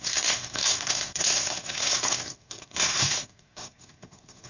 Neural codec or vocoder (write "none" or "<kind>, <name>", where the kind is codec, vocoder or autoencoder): codec, SNAC